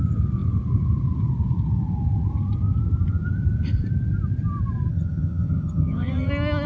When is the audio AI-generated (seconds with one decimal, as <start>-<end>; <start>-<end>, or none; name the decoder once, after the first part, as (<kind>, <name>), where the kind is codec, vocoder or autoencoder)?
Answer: 4.9-6.3 (vocoder, HiFi-GAN)